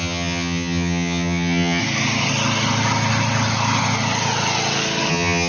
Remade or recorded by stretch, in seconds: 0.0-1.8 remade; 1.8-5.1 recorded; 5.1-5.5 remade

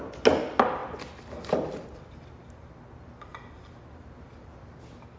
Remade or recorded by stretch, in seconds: 0.0-5.2 recorded

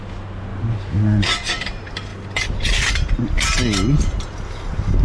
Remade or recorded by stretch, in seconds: 0.0-5.0 recorded

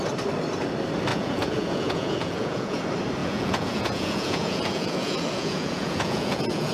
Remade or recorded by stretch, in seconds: 0.0-1.1 recorded; 1.1-2.8 remade; 2.8-3.2 recorded; 3.2-6.7 remade

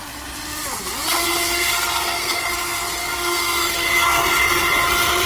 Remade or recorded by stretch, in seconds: 0.0-1.7 recorded; 1.7-2.4 remade; 2.4-3.0 recorded; 3.0-3.7 remade; 3.7-5.3 recorded

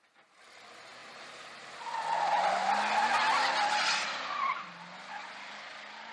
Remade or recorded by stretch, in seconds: 0.0-1.0 recorded; 1.0-1.9 remade; 1.9-6.1 recorded